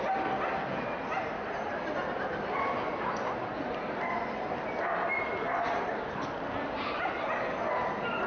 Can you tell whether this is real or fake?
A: real